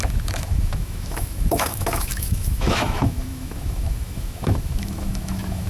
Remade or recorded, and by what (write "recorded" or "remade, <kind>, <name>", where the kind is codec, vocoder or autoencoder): remade, autoencoder, DAC-VAE